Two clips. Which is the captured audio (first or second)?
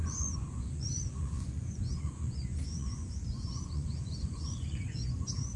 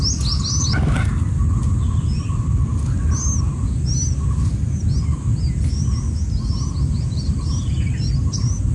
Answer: second